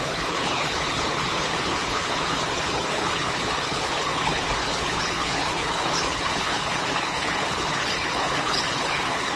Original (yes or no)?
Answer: no